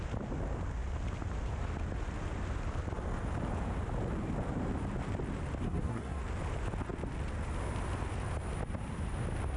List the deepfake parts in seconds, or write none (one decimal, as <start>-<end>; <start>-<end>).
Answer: 5.6-6.2